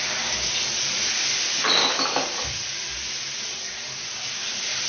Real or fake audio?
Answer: real